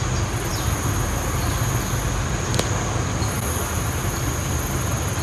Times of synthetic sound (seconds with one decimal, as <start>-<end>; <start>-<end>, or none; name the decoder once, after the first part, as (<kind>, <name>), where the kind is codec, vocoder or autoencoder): none